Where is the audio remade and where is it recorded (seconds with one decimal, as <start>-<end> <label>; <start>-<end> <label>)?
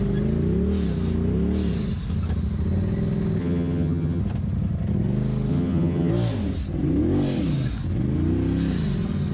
0.0-3.4 recorded; 3.4-4.2 remade; 4.2-5.5 recorded; 5.5-6.1 remade; 6.1-9.3 recorded